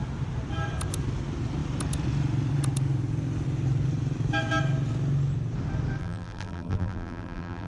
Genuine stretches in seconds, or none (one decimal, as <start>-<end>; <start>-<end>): 0.0-6.0